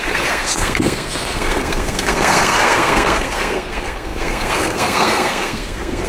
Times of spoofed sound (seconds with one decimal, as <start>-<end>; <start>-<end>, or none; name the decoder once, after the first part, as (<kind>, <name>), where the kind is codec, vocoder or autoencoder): 0.0-6.1 (codec, SNAC)